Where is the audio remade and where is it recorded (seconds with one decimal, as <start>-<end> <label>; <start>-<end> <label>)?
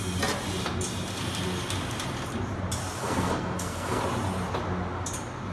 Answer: 0.0-3.0 recorded; 3.0-4.0 remade; 4.0-5.5 recorded